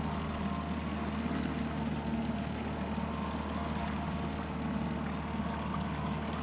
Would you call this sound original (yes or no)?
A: yes